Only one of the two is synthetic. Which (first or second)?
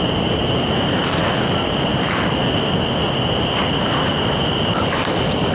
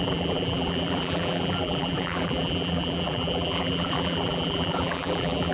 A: second